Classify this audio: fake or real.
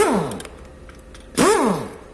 real